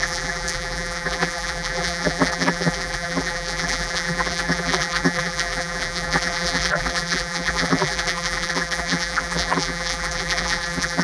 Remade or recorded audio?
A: remade